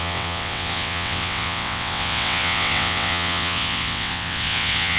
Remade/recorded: remade